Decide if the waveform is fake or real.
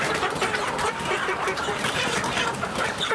fake